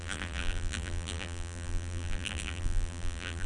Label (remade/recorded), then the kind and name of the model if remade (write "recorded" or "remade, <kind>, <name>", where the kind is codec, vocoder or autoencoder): remade, vocoder, BigVGAN v2